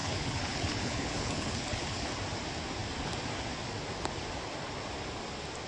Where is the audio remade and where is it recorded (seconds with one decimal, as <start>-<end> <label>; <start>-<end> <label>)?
0.0-2.1 remade; 2.1-5.7 recorded